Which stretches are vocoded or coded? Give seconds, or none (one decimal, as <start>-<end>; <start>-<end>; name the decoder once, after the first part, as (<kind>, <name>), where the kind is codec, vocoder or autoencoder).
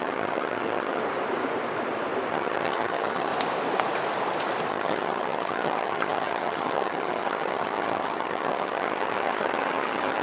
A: 0.0-1.0 (vocoder, HiFi-GAN); 2.3-3.3; 4.7-10.2